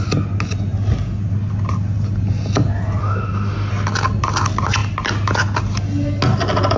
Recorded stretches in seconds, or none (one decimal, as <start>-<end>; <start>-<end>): 0.0-3.0; 3.7-6.8